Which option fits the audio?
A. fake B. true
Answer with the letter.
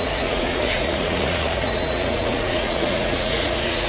A